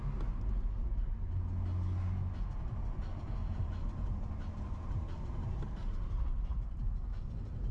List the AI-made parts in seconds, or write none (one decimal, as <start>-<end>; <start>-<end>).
3.4-7.7